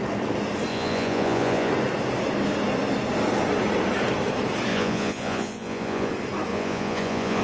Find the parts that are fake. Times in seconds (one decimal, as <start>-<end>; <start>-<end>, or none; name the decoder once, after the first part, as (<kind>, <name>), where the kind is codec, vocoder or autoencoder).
0.7-1.7 (vocoder, Vocos); 4.7-6.1; 6.5-7.4